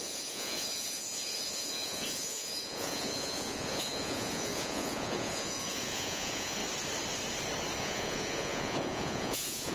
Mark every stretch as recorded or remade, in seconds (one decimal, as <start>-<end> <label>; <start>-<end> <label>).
0.0-6.6 remade; 6.6-7.8 recorded; 7.8-9.7 remade